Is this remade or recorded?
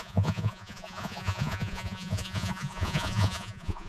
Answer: remade